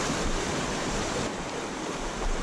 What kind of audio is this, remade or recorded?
remade